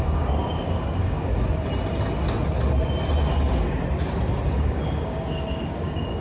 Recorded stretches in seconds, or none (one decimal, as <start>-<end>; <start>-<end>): 1.3-4.5